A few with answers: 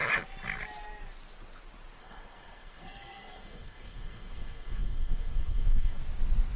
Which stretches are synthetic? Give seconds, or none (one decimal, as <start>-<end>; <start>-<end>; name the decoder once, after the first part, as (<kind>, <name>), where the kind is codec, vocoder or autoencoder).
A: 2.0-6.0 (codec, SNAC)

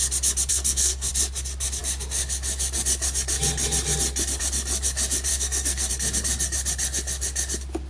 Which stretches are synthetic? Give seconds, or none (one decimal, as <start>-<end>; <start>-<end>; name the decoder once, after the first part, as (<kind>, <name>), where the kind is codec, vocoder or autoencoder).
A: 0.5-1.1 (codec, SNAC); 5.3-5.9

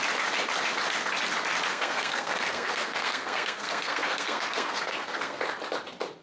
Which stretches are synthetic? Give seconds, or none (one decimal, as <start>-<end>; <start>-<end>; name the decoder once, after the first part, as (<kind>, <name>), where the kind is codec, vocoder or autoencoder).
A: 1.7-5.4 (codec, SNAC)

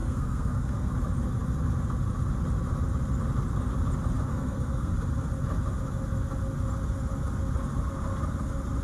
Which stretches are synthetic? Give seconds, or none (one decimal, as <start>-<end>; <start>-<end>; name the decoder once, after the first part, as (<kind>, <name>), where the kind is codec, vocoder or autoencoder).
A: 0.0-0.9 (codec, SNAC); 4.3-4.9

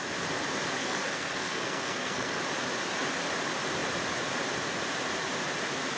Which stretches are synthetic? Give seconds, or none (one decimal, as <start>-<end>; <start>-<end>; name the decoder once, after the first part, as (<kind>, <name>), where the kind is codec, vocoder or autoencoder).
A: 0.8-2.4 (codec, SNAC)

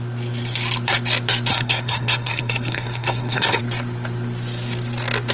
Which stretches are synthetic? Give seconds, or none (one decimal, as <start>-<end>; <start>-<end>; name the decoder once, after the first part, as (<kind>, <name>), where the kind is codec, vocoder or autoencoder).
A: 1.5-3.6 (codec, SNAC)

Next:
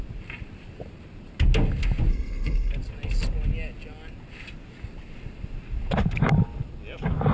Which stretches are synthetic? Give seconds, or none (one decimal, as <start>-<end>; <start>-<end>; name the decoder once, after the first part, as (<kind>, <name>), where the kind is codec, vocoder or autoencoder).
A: 2.1-2.7 (codec, SNAC)

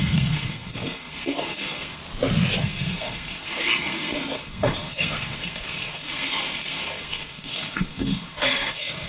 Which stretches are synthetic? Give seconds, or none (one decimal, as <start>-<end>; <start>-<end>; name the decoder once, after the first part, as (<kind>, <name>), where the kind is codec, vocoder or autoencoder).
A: 0.0-2.0 (codec, SNAC); 2.6-9.1